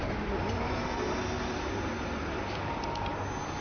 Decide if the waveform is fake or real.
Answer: real